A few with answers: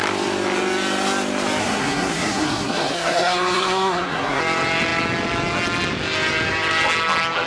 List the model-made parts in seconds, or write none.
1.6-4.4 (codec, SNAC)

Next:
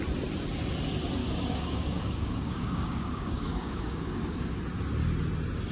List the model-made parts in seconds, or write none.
1.2-4.6 (codec, DAC)

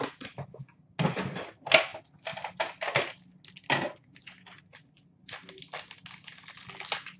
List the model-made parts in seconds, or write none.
none

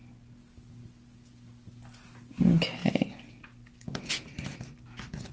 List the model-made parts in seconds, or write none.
none